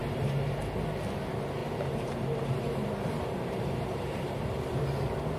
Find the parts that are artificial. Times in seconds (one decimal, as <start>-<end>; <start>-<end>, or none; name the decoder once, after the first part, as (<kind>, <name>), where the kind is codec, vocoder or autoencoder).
0.0-0.6 (vocoder, BigVGAN v2); 1.6-4.8